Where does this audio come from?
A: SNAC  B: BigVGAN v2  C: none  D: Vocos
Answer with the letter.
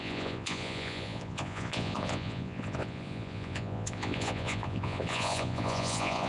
D